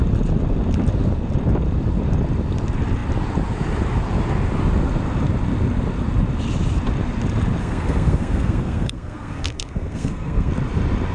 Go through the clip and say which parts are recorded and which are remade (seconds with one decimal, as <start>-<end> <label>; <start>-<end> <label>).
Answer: 0.0-7.6 recorded; 7.6-10.5 remade; 10.5-11.1 recorded